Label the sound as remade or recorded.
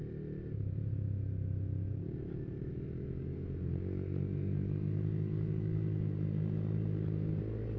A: recorded